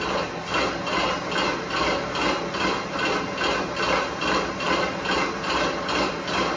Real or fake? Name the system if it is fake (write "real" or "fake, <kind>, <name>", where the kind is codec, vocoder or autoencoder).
real